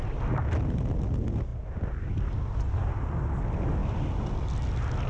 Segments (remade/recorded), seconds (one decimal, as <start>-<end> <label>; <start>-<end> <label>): 0.0-1.5 recorded; 1.5-2.9 remade; 2.9-5.1 recorded